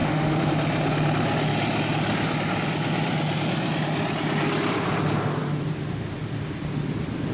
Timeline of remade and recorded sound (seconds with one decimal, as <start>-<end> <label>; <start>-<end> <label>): 0.0-0.5 remade; 0.5-7.3 recorded